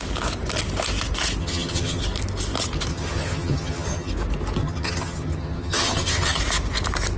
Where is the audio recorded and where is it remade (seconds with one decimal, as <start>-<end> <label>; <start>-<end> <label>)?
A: 0.0-1.4 recorded; 1.4-2.0 remade; 2.0-2.9 recorded; 2.9-4.1 remade; 4.1-4.6 recorded; 4.6-6.4 remade; 6.4-7.2 recorded